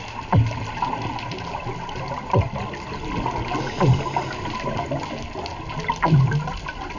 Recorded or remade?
recorded